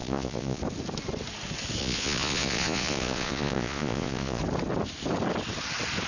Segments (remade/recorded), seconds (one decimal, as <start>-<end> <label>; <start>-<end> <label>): 0.0-0.6 remade; 0.6-1.8 recorded; 1.8-4.4 remade; 4.4-6.1 recorded